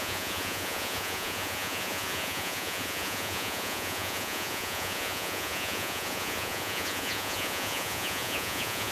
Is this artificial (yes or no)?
yes